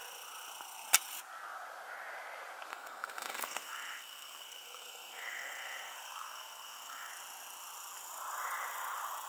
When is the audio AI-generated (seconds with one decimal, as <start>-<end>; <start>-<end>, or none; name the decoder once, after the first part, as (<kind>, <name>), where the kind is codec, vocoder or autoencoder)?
2.7-7.1 (codec, SNAC)